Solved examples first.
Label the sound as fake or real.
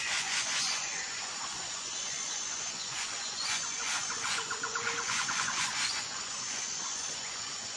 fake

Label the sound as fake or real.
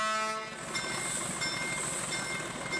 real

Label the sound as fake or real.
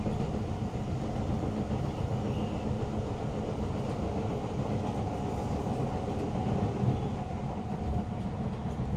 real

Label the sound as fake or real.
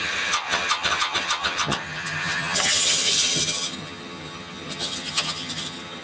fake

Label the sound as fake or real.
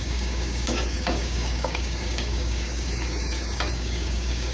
fake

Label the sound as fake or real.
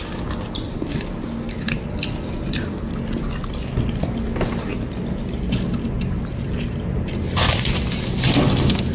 real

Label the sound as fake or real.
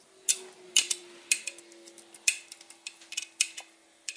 real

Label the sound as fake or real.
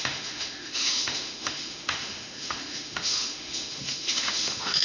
fake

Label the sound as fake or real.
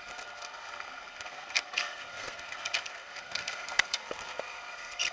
fake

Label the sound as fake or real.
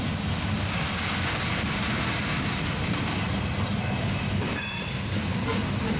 real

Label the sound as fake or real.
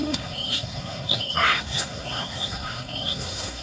fake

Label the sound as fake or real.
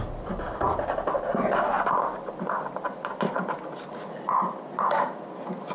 real